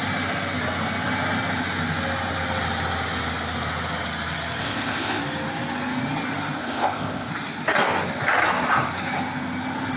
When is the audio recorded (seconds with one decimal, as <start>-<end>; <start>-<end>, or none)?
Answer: 0.0-4.6; 5.2-6.6; 7.3-10.0